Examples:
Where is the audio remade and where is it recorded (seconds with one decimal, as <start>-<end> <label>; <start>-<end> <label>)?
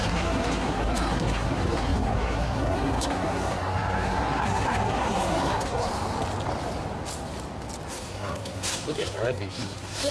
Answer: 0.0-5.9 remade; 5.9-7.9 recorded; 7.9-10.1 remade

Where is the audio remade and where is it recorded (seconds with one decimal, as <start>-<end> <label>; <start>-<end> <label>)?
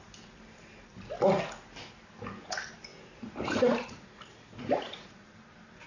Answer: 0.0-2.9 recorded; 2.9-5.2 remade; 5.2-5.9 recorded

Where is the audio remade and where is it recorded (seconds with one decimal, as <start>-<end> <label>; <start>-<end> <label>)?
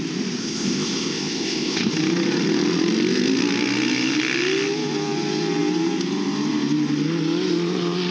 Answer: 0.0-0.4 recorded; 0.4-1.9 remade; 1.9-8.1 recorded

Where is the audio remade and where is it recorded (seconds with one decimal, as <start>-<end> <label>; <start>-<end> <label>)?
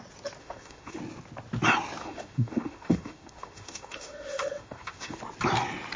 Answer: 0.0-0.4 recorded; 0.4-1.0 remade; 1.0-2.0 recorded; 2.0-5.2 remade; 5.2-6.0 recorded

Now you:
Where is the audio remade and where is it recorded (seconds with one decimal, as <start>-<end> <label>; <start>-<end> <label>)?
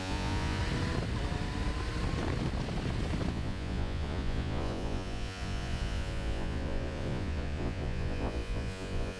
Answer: 0.0-0.6 remade; 0.6-3.3 recorded; 3.3-9.2 remade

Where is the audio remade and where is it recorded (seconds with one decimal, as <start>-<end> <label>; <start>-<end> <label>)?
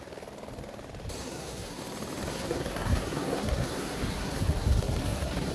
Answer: 0.0-1.2 recorded; 1.2-1.8 remade; 1.8-2.3 recorded; 2.3-5.5 remade